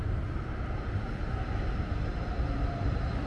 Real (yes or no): yes